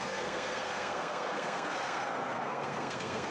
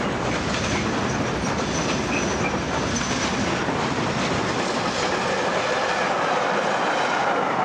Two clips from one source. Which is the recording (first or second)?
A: second